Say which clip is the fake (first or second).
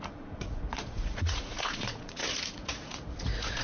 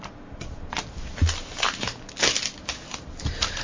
first